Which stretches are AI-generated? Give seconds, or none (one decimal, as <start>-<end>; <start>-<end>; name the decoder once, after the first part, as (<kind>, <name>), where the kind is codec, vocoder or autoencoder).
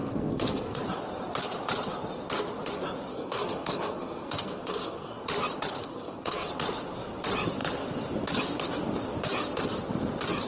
0.0-0.8 (codec, SNAC); 3.1-5.2; 5.8-6.5